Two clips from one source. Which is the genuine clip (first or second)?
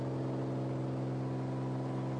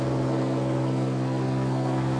first